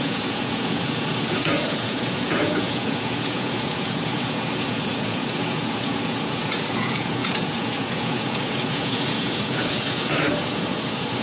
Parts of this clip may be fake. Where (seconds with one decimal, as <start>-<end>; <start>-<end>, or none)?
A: 0.0-11.2